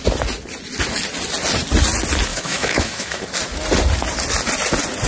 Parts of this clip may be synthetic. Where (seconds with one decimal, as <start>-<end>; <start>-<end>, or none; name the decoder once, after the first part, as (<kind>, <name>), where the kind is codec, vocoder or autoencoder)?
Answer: 2.3-3.2 (autoencoder, DAC-VAE)